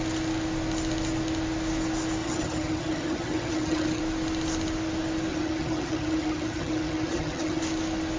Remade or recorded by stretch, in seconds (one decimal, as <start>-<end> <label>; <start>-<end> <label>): 0.0-2.2 recorded; 2.2-4.0 remade; 4.0-5.3 recorded; 5.3-7.6 remade; 7.6-8.2 recorded